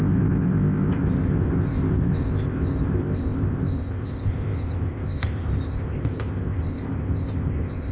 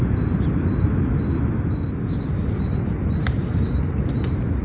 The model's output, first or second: first